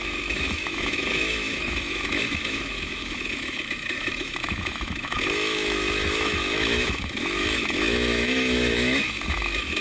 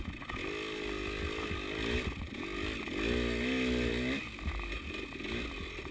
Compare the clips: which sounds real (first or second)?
second